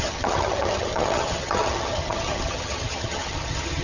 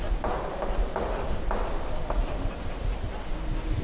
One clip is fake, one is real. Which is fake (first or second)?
first